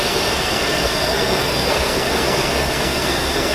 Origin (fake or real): fake